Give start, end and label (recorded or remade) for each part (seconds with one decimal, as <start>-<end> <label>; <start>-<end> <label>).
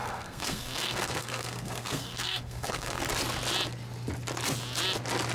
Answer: 0.0-3.0 remade; 3.0-5.3 recorded